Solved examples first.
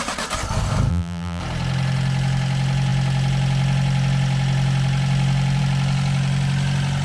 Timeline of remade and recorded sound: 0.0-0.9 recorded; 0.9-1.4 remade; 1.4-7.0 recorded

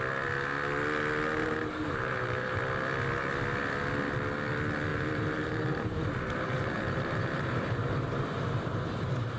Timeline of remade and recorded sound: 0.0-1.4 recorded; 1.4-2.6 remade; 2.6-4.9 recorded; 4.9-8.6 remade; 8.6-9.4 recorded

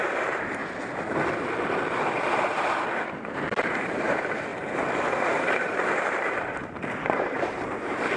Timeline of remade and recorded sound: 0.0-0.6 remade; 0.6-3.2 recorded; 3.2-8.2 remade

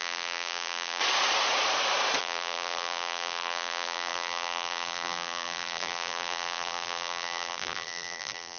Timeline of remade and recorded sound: 0.0-1.0 remade; 1.0-2.2 recorded; 2.2-8.6 remade

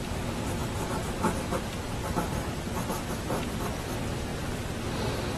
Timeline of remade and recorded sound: 0.0-5.4 recorded